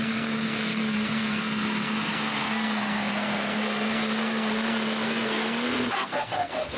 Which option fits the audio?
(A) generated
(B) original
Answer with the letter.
A